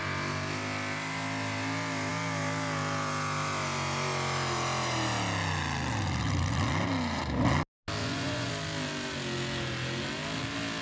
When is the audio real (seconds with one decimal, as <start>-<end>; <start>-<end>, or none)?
0.0-8.0; 8.5-10.8